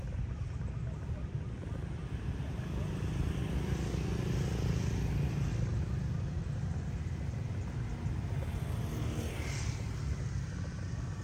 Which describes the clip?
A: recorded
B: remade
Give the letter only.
A